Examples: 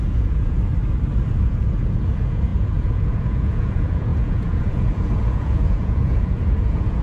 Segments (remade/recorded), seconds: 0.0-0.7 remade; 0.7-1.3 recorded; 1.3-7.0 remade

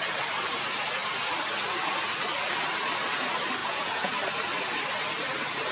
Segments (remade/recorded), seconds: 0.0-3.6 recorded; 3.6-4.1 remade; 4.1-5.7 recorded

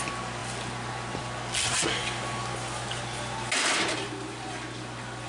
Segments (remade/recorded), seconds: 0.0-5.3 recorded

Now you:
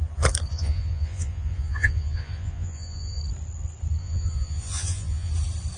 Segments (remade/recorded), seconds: 0.0-0.5 recorded; 0.5-3.2 remade; 3.2-4.0 recorded; 4.0-5.3 remade; 5.3-5.8 recorded